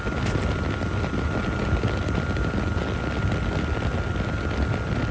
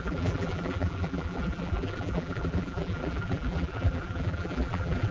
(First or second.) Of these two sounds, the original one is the first